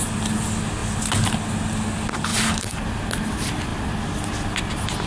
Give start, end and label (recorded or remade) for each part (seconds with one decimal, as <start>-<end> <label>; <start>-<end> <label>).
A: 0.0-2.3 recorded; 2.3-2.9 remade; 2.9-5.1 recorded